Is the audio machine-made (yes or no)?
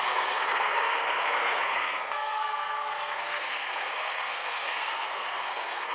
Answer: yes